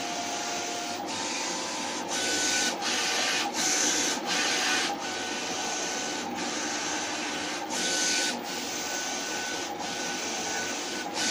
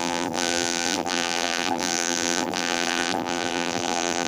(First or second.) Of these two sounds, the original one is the first